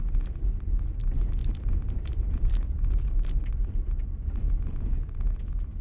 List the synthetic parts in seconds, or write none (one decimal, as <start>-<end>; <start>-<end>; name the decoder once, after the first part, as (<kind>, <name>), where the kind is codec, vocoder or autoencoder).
1.4-3.6 (vocoder, BigVGAN v2)